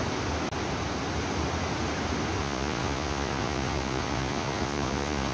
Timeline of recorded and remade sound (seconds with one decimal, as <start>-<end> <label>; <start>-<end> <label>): 0.0-2.4 recorded; 2.4-5.3 remade